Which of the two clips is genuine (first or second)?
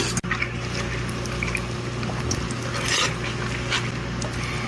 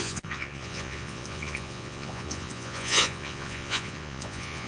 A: first